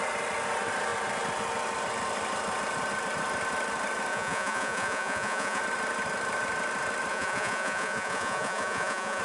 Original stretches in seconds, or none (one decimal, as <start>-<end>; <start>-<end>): 0.0-4.1; 5.6-7.1